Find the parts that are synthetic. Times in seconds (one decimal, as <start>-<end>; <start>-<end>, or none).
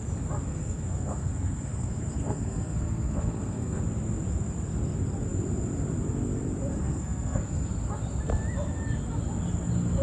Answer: 0.5-3.8; 6.7-7.7